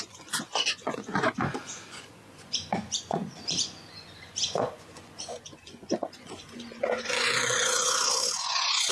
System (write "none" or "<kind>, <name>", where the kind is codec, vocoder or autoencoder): vocoder, Vocos